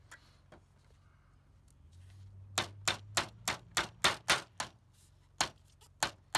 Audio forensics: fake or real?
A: real